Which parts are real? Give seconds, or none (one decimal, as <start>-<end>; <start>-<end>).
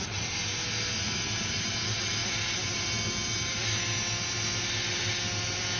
0.0-5.8